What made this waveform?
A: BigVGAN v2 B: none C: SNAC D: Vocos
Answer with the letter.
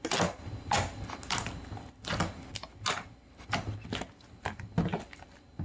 B